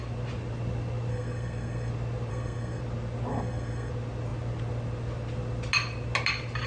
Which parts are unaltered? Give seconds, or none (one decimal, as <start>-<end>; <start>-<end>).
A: 0.0-1.1; 1.9-2.3; 2.8-3.3; 3.9-6.7